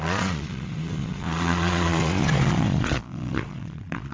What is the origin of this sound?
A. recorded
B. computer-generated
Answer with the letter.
B